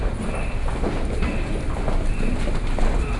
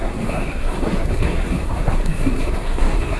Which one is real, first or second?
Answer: first